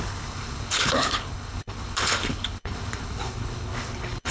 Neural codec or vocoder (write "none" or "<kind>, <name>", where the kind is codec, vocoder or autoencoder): codec, HILCodec